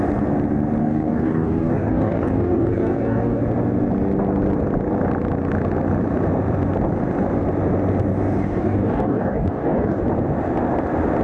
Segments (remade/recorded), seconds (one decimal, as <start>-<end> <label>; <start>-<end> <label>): 0.0-0.8 recorded; 0.8-3.4 remade; 3.4-8.4 recorded; 8.4-10.0 remade; 10.0-11.2 recorded